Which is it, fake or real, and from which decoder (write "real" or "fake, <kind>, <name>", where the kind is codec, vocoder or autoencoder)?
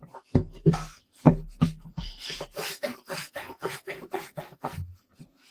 fake, codec, SNAC